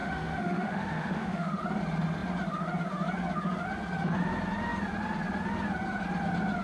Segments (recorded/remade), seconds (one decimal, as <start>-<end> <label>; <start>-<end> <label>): 0.0-1.6 remade; 1.6-6.6 recorded